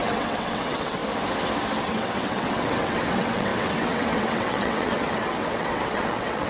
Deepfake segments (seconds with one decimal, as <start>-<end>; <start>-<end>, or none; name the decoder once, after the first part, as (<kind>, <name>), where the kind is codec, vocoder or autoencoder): 0.0-1.0 (vocoder, WaveNeXt); 1.8-6.5